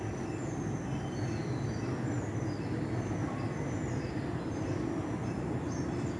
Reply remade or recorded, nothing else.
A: recorded